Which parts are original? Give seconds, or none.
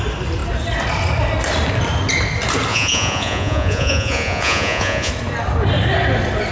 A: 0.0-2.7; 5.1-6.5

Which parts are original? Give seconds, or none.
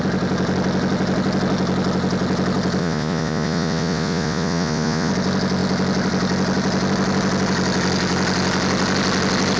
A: 0.0-2.8; 5.1-9.6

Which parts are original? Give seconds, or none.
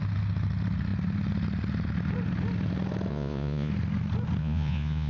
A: 0.0-3.1; 3.7-4.4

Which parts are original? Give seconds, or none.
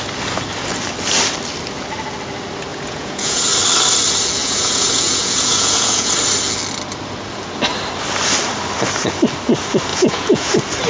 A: 0.0-2.7; 3.4-4.4; 6.1-9.9; 10.5-10.9